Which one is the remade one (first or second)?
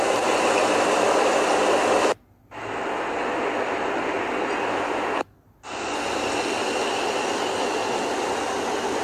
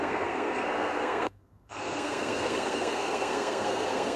second